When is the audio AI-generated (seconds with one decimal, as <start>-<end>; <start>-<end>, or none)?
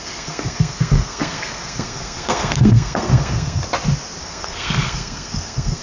0.0-3.6; 4.2-5.8